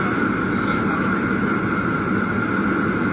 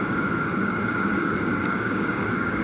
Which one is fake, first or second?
second